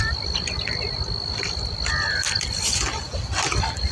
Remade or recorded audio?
recorded